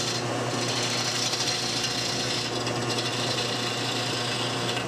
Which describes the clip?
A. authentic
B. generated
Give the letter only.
A